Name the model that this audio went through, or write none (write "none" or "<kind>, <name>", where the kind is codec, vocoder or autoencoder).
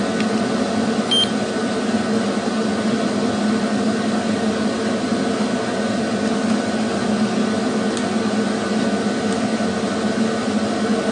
none